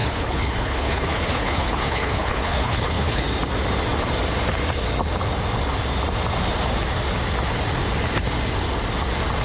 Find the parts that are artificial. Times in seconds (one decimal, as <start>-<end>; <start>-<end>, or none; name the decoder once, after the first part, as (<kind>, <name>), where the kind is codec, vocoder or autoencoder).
0.0-3.2 (codec, HILCodec)